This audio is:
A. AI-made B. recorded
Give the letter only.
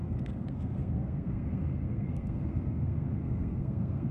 A